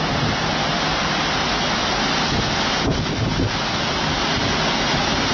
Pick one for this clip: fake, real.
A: real